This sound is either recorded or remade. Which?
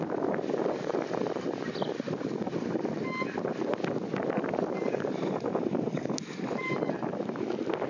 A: recorded